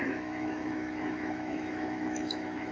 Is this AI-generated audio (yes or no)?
yes